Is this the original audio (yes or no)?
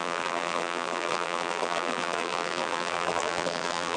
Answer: no